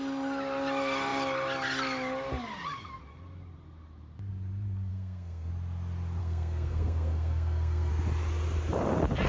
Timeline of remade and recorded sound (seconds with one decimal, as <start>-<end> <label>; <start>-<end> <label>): 0.0-4.9 recorded; 4.9-5.5 remade; 5.5-6.2 recorded; 6.2-7.9 remade; 7.9-9.3 recorded